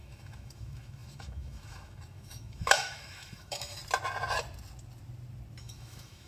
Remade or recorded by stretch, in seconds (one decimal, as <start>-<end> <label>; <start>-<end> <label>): 0.0-3.8 remade; 3.8-5.6 recorded; 5.6-6.3 remade